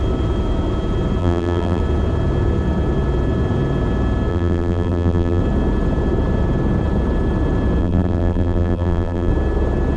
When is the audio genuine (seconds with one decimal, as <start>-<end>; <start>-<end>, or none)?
0.0-1.2; 1.8-4.3; 5.4-7.8; 9.3-10.0